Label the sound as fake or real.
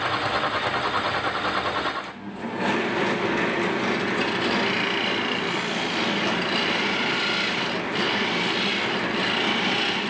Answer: real